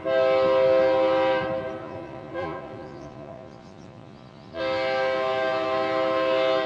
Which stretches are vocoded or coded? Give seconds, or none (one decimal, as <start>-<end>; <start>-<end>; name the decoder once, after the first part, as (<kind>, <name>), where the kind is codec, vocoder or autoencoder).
1.8-4.6 (vocoder, Vocos)